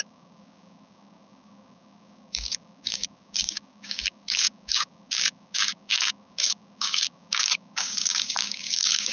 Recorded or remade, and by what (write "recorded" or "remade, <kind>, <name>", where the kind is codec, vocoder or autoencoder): remade, codec, DAC